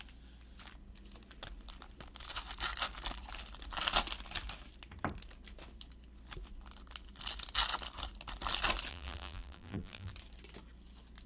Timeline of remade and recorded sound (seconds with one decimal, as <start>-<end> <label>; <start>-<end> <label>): 0.0-8.9 recorded; 8.9-10.1 remade; 10.1-11.3 recorded